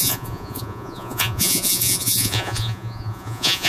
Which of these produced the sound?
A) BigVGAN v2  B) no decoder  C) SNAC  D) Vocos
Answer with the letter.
D